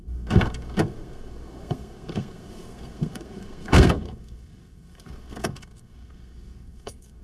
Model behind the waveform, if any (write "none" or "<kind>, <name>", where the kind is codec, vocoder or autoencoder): codec, SNAC